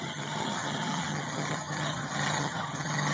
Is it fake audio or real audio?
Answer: fake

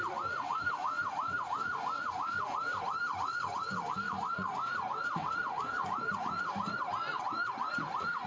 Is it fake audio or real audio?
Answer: fake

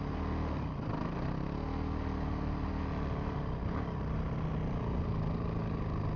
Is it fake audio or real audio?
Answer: real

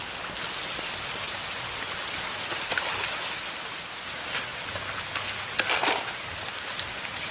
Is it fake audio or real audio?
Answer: real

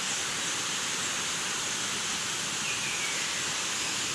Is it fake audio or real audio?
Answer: real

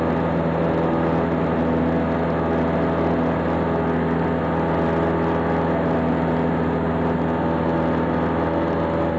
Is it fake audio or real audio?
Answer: real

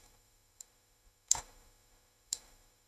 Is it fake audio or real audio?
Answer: fake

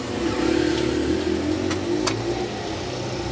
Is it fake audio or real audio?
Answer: real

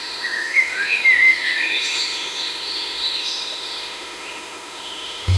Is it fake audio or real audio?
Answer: fake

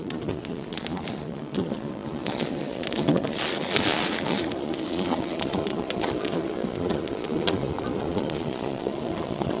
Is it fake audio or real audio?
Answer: fake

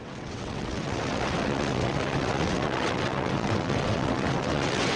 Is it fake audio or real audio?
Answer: fake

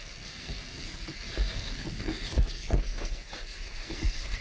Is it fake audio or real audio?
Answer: fake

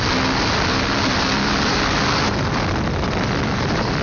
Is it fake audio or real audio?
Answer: real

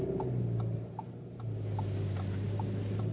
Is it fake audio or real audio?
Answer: real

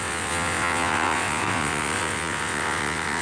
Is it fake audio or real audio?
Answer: fake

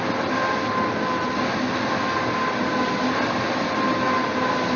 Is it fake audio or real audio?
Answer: real